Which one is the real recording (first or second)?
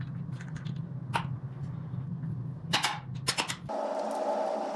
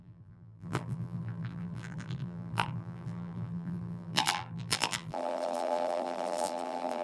first